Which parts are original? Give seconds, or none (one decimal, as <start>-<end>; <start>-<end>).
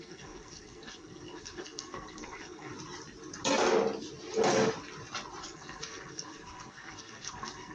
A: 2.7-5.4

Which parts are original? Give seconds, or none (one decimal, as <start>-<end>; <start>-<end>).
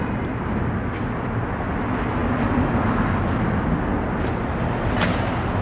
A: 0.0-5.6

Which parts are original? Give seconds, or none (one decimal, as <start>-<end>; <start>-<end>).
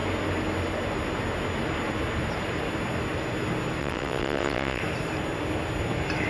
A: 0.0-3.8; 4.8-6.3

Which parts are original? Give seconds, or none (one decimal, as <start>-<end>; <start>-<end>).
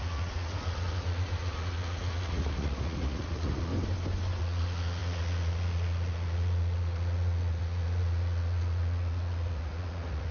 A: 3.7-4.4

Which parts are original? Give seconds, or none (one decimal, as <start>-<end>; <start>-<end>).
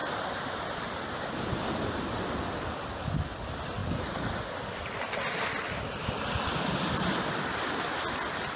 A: 0.0-8.6